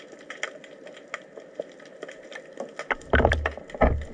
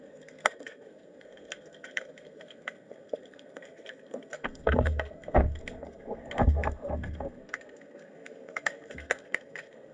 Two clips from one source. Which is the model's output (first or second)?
second